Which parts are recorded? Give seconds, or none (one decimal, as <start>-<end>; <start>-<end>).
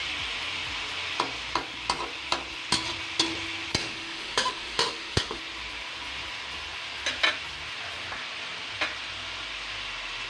0.0-3.8; 5.4-10.3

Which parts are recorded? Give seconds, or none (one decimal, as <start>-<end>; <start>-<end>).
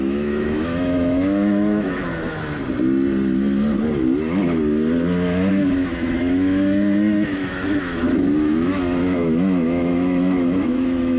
2.1-5.5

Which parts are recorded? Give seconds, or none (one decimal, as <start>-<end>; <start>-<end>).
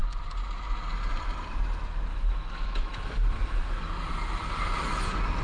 0.0-2.1; 3.8-5.4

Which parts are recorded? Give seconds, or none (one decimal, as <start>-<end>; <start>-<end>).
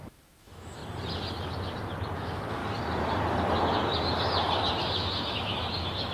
0.8-2.2; 2.6-4.7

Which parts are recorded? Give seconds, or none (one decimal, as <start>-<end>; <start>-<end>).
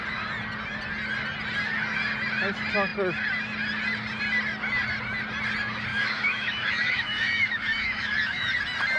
0.0-5.9; 8.5-9.0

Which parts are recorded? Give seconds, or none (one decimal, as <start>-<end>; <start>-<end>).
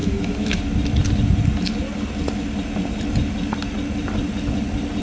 0.6-5.0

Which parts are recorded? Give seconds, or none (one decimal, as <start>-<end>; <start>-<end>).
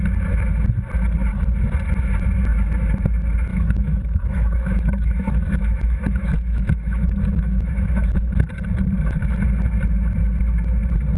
0.0-3.5; 8.3-11.2